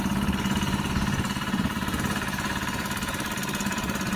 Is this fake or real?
fake